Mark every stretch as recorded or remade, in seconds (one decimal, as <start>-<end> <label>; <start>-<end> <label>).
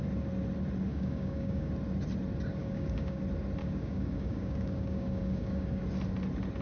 0.0-0.9 recorded; 0.9-1.7 remade; 1.7-2.6 recorded; 2.6-3.2 remade; 3.2-3.6 recorded; 3.6-5.8 remade; 5.8-6.6 recorded